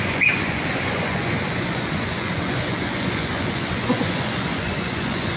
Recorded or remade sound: remade